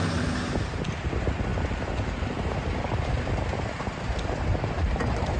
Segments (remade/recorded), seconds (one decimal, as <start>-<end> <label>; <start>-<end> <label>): 0.0-5.4 recorded